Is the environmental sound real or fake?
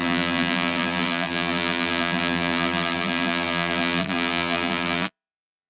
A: fake